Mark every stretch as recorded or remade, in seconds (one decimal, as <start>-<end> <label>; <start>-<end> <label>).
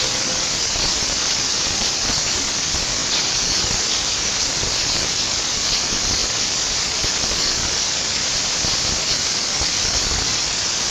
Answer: 0.0-8.2 remade; 8.2-9.0 recorded; 9.0-10.9 remade